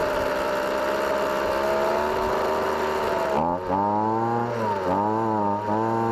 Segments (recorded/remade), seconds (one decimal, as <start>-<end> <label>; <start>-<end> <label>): 0.0-6.1 recorded